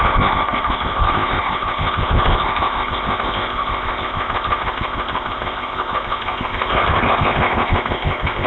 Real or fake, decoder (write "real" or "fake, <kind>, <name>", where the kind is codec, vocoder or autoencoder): fake, codec, ZipCodec